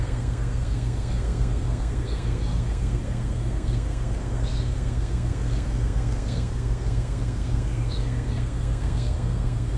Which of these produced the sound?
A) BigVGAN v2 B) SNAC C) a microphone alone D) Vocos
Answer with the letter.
B